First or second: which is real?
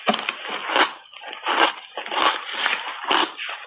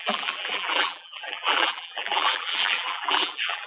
first